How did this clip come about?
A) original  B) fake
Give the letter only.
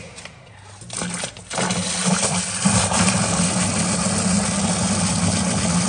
A